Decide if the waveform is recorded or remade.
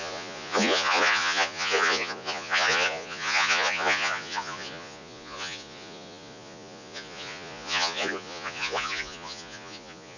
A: remade